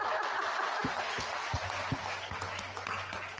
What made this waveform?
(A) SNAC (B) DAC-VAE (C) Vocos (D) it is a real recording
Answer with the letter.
D